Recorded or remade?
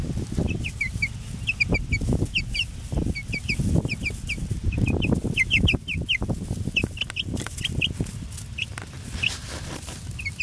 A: recorded